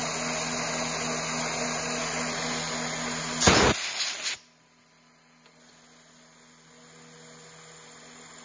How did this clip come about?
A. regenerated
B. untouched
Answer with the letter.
B